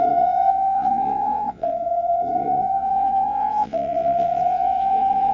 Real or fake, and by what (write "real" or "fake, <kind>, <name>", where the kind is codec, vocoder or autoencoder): fake, vocoder, WaveNeXt